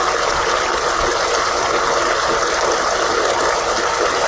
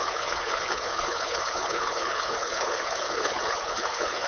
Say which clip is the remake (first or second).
second